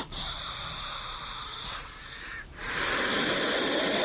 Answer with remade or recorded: remade